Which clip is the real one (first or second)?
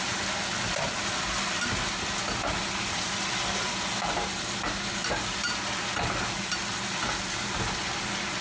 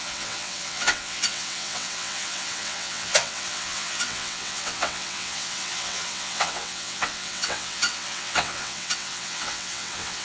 first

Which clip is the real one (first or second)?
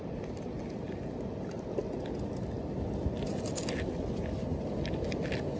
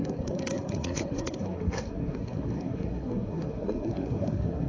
first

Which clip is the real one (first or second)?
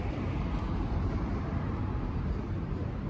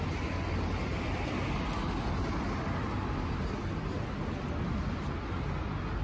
second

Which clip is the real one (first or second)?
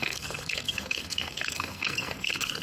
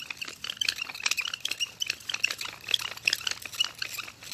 second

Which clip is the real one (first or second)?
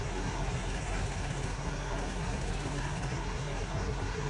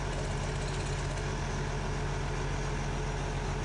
second